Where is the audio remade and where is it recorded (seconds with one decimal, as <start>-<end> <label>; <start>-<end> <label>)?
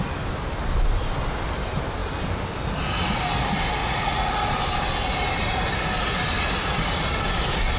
0.0-3.8 recorded; 3.8-4.6 remade; 4.6-7.8 recorded